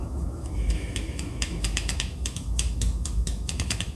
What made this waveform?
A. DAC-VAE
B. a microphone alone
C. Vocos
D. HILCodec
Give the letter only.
A